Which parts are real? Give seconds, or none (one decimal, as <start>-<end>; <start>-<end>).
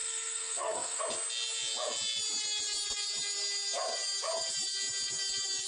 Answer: 1.0-5.7